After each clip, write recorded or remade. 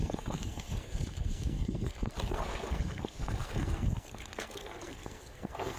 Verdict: remade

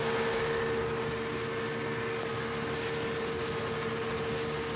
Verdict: recorded